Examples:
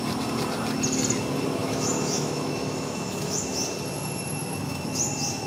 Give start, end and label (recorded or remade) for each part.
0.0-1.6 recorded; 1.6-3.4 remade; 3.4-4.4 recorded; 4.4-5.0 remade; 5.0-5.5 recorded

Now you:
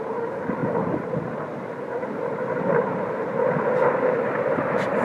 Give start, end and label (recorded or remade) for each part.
0.0-0.6 recorded; 0.6-3.6 remade; 3.6-5.0 recorded

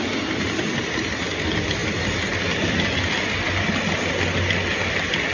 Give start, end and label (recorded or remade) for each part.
0.0-5.3 recorded

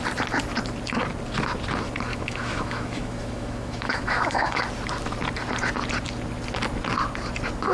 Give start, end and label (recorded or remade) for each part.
0.0-2.1 recorded; 2.1-4.6 remade; 4.6-7.7 recorded